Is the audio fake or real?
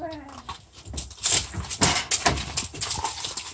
real